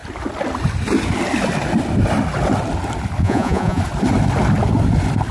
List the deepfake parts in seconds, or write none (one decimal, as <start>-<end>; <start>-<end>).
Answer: 3.2-3.8